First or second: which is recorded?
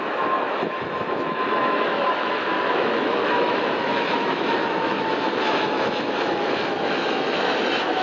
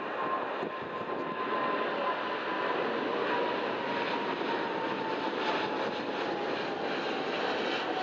second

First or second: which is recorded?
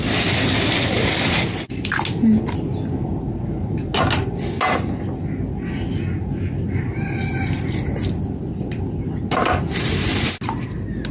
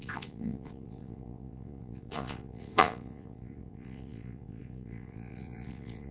first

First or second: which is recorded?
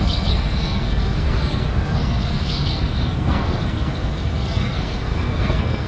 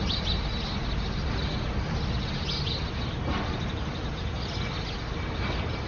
second